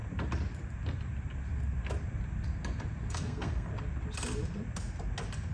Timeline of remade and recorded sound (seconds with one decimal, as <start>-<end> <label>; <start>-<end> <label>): 0.0-3.1 recorded; 3.1-3.7 remade; 3.7-5.5 recorded

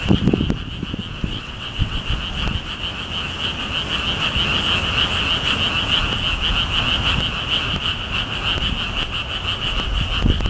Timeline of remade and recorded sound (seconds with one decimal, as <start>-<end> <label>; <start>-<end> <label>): 0.0-1.3 recorded; 1.3-2.0 remade; 2.0-10.5 recorded

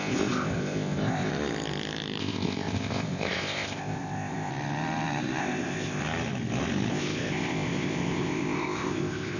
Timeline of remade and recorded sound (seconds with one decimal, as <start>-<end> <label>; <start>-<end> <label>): 0.0-1.3 remade; 1.3-2.2 recorded; 2.2-4.5 remade; 4.5-5.4 recorded; 5.4-6.0 remade; 6.0-6.9 recorded; 6.9-9.4 remade

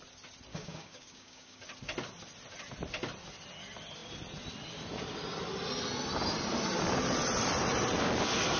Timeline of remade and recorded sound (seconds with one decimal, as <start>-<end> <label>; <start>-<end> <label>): 0.0-0.5 recorded; 0.5-1.6 remade; 1.6-8.6 recorded

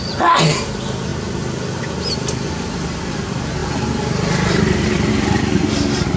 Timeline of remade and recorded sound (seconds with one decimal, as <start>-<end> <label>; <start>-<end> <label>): 0.0-6.2 recorded

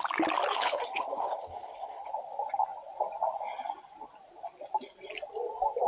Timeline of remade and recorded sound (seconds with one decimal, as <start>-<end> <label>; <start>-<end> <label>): 0.0-0.5 recorded; 0.5-2.1 remade; 2.1-5.9 recorded